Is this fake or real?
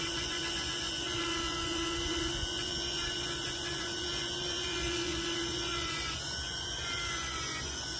fake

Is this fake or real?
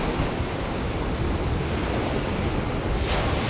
real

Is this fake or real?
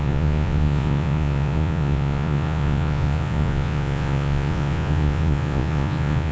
fake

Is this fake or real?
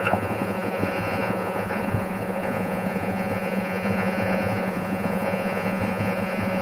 fake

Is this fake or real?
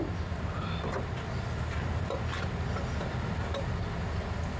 real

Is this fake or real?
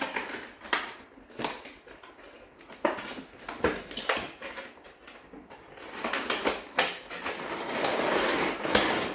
real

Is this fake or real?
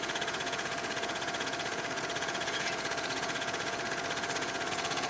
fake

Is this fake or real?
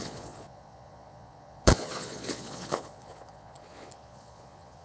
fake